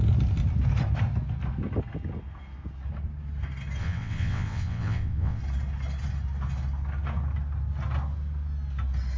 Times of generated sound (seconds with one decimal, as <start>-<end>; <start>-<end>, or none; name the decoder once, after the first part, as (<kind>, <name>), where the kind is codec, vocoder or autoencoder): 3.8-5.4 (vocoder, WaveNeXt)